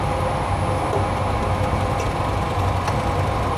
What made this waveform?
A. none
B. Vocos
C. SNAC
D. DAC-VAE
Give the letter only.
A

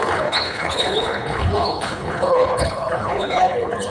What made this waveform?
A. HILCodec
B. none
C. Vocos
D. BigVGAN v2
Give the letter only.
A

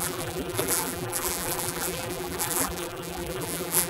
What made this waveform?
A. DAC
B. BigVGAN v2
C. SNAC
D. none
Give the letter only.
B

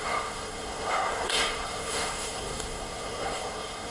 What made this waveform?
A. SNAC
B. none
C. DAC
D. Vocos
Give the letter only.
A